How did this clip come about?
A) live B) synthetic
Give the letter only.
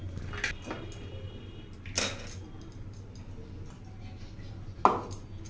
A